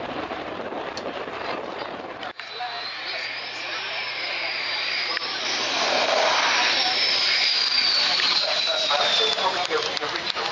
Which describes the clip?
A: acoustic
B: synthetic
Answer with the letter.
B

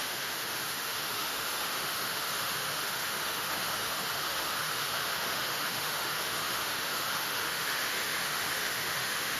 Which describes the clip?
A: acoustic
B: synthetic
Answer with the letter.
B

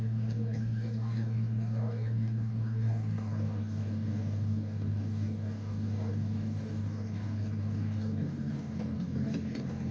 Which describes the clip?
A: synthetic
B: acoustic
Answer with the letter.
A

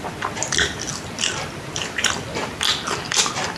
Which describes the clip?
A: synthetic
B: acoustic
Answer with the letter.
B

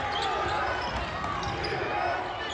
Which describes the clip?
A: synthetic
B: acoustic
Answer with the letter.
B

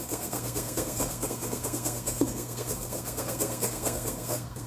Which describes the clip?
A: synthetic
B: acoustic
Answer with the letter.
A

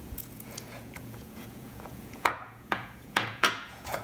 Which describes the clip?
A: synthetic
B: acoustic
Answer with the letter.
A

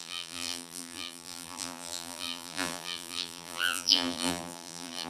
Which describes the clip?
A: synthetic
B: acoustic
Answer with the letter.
A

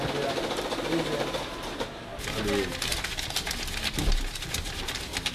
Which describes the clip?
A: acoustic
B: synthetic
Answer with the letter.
A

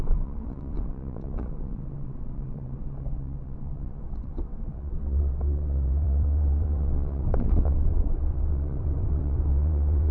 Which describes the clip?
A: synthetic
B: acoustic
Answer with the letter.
A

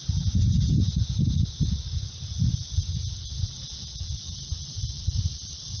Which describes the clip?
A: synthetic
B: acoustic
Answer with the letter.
B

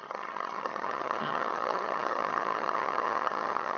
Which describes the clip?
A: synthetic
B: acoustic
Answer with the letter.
A